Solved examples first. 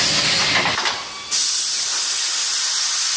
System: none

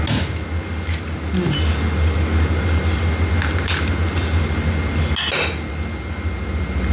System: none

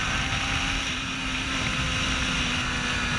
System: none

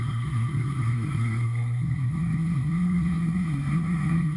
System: codec, SNAC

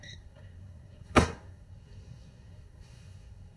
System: codec, SNAC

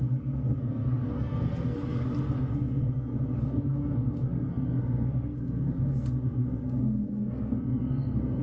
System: codec, SNAC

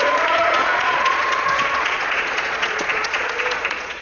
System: vocoder, Vocos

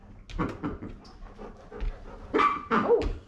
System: none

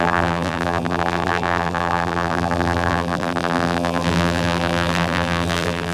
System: vocoder, BigVGAN v2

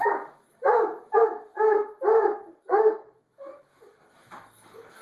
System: autoencoder, DAC-VAE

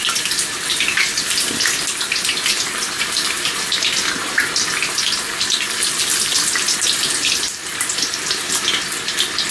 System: vocoder, BigVGAN v2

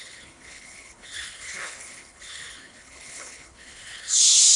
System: codec, HILCodec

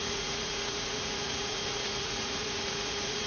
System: vocoder, Vocos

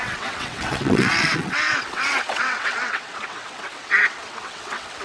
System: vocoder, WaveNeXt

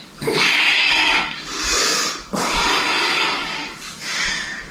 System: codec, DAC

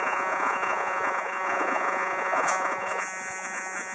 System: vocoder, Vocos